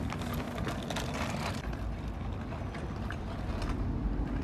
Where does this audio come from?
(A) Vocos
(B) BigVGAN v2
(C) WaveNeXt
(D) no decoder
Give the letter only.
D